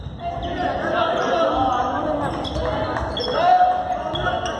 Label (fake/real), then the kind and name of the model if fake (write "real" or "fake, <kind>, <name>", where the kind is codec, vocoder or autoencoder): real